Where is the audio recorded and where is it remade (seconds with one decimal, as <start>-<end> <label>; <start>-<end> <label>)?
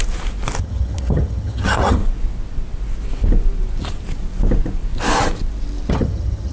0.0-0.6 recorded; 0.6-2.0 remade; 2.0-5.9 recorded; 5.9-6.5 remade